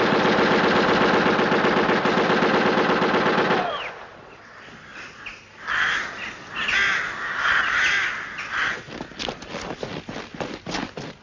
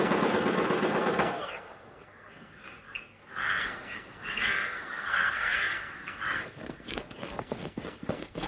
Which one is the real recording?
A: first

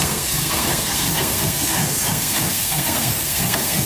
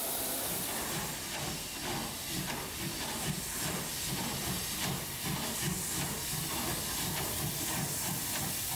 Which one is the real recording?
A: second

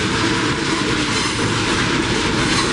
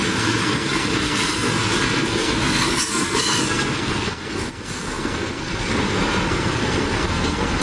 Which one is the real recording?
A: first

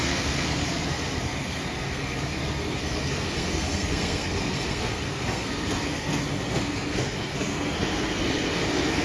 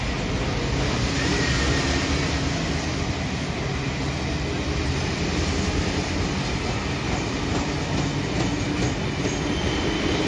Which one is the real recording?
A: second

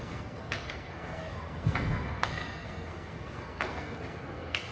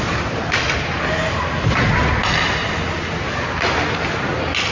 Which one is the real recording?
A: second